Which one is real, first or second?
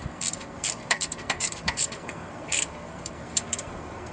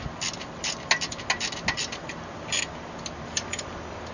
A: second